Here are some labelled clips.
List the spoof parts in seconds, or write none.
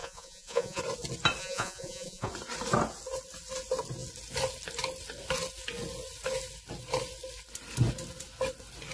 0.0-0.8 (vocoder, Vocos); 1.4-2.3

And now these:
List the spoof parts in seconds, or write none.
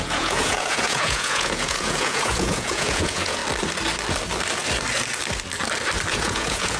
0.0-3.4 (vocoder, Vocos); 6.1-6.8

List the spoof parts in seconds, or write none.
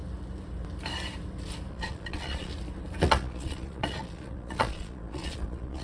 1.7-2.5 (vocoder, Vocos); 3.0-5.8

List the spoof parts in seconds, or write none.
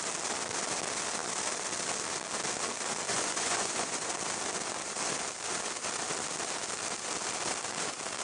3.1-4.1 (vocoder, Vocos)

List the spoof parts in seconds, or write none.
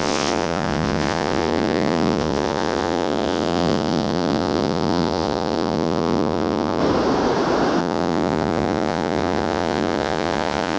0.0-6.8 (vocoder, Vocos); 7.8-10.8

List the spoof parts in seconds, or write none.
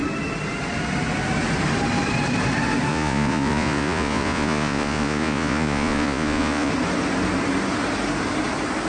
2.9-6.7 (vocoder, Vocos)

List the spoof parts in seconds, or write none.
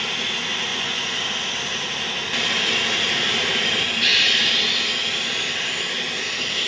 0.7-1.2 (vocoder, Vocos)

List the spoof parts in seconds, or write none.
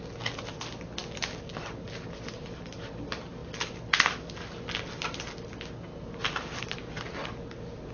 none